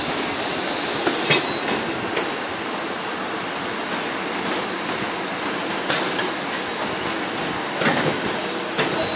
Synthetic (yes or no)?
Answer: no